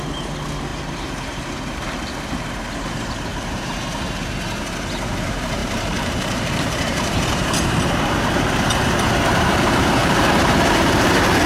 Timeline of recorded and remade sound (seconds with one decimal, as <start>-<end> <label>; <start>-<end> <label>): 0.0-0.7 recorded; 0.7-2.1 remade; 2.1-3.3 recorded; 3.3-4.1 remade; 4.1-5.6 recorded; 5.6-9.5 remade; 9.5-10.0 recorded; 10.0-11.1 remade; 11.1-11.5 recorded